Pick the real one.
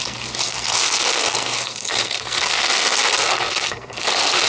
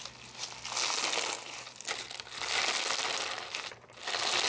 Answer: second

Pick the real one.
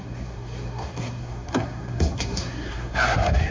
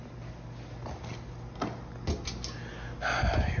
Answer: second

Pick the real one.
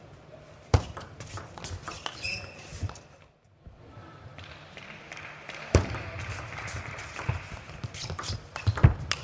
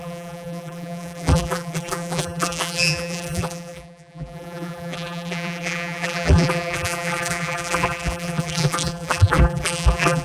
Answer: first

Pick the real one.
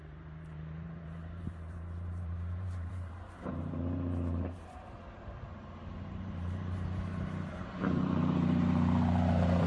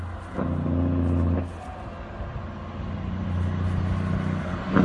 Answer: second